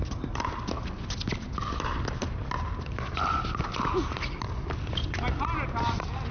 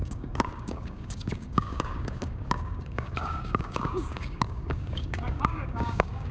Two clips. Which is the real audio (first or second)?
first